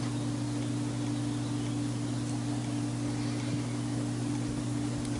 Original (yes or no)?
yes